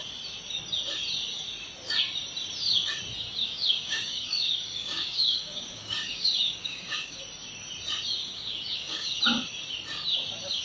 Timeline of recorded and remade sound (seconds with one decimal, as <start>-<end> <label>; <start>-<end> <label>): 0.0-3.4 recorded; 3.4-7.2 remade; 7.2-8.2 recorded; 8.2-9.2 remade; 9.2-10.6 recorded